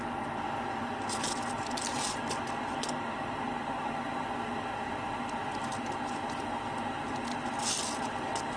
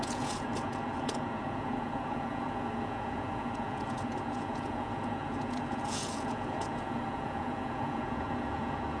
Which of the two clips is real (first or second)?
first